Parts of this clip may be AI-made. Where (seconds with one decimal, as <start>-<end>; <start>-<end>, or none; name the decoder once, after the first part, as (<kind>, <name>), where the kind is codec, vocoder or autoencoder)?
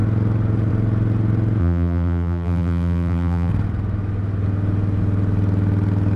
1.6-3.5 (vocoder, BigVGAN v2)